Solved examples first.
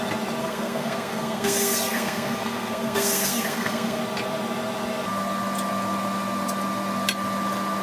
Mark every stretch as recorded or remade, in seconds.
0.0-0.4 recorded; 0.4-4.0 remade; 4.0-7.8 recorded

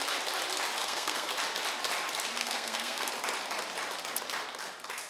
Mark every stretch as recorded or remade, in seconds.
0.0-0.8 recorded; 0.8-1.3 remade; 1.3-2.4 recorded; 2.4-3.1 remade; 3.1-5.1 recorded

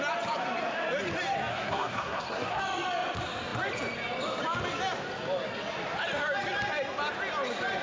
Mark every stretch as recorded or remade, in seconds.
0.0-1.5 recorded; 1.5-2.6 remade; 2.6-7.8 recorded

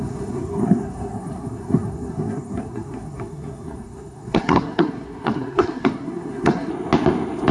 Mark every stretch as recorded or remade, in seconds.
0.0-6.7 remade; 6.7-7.5 recorded

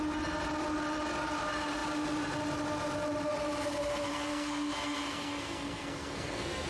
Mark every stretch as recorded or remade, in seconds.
0.0-4.1 recorded; 4.1-6.7 remade